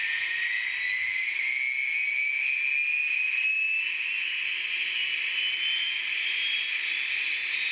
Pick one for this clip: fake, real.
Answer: real